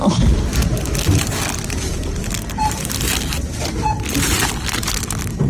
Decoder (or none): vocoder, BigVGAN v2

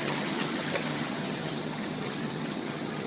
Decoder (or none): vocoder, HiFi-GAN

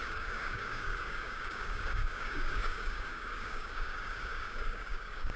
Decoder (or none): codec, DAC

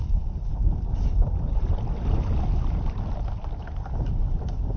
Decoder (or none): none